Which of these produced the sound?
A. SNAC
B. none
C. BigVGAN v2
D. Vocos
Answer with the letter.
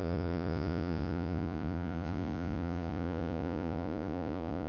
D